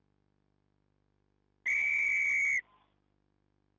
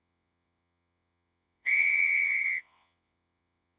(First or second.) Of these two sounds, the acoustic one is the first